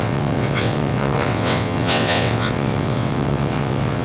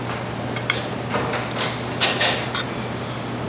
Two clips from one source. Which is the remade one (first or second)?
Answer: first